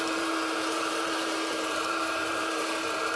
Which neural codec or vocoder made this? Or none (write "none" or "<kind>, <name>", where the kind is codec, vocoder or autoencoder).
vocoder, BigVGAN v2